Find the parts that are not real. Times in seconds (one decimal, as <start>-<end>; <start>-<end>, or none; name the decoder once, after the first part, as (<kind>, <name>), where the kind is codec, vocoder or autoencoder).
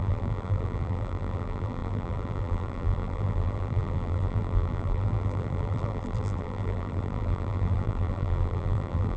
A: 0.0-9.2 (vocoder, BigVGAN v2)